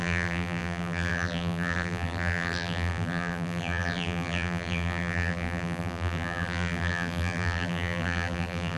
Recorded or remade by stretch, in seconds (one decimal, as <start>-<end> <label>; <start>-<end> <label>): 0.0-8.8 remade